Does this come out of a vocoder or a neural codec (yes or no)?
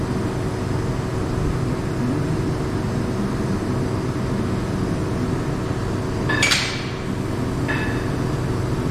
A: no